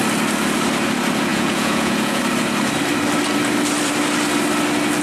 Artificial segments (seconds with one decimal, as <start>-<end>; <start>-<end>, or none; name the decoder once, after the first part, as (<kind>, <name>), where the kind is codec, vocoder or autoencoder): 1.3-2.2 (vocoder, Vocos)